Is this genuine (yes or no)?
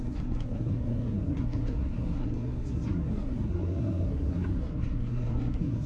no